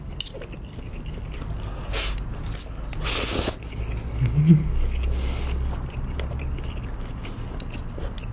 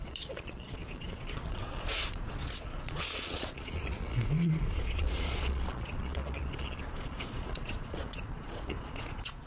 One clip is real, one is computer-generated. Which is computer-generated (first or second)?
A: second